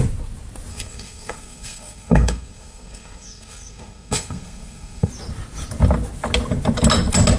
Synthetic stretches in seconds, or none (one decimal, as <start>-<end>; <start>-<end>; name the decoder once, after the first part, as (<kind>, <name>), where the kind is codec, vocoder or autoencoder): 0.7-5.1 (codec, SNAC)